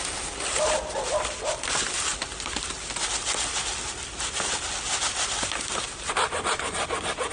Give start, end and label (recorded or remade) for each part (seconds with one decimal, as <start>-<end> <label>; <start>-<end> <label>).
0.0-7.3 recorded